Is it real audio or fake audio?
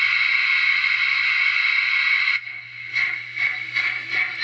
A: real